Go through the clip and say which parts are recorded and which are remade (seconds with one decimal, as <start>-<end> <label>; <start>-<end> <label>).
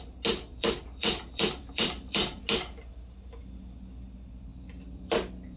0.0-0.5 recorded; 0.5-2.4 remade; 2.4-4.5 recorded; 4.5-5.6 remade